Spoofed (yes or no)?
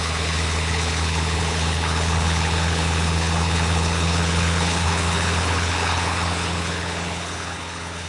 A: yes